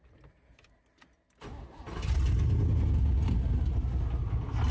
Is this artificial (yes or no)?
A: no